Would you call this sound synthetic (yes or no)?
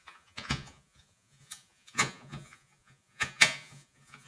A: yes